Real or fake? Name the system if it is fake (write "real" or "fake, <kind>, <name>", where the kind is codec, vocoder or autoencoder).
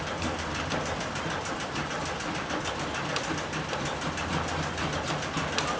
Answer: real